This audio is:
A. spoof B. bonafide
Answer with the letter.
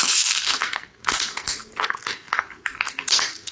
A